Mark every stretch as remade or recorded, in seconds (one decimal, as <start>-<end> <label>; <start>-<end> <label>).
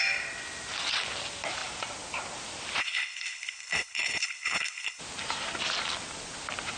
0.0-2.8 recorded; 2.8-5.0 remade; 5.0-6.8 recorded